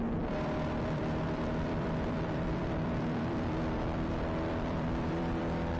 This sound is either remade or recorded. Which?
remade